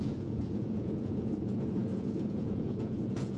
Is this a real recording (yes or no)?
no